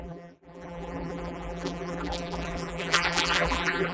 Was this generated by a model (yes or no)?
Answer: yes